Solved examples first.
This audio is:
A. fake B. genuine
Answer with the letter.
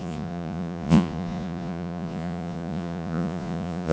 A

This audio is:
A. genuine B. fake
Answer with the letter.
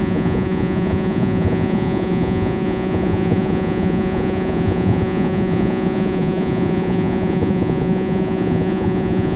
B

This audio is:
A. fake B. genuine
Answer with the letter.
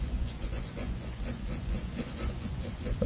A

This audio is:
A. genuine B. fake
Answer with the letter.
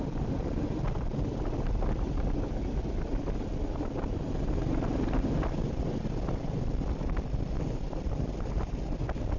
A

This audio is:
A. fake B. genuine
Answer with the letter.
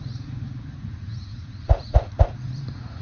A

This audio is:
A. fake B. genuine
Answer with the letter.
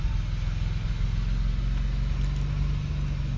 B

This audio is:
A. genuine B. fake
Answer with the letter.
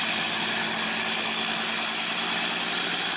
A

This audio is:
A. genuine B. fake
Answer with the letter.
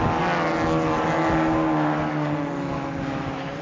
A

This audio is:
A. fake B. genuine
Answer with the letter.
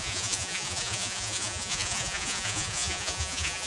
A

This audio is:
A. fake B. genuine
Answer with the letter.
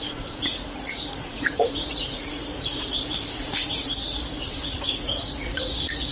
A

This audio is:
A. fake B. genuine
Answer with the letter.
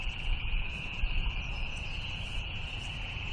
A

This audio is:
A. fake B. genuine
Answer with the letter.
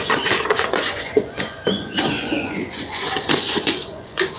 A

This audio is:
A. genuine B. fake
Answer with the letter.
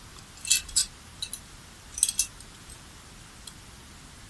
A